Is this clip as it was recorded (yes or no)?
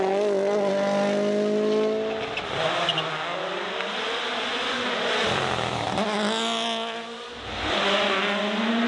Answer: yes